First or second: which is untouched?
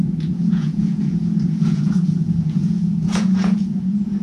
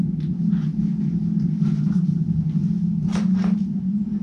second